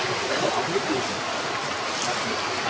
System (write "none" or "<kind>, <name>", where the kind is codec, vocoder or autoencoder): none